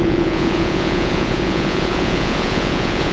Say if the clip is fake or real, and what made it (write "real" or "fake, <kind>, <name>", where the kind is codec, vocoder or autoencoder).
fake, vocoder, Vocos